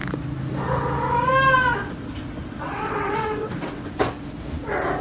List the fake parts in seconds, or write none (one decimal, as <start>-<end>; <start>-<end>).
1.8-3.9